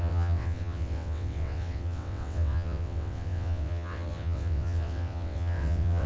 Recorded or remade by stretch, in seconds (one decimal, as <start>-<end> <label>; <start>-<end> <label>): 0.0-6.1 remade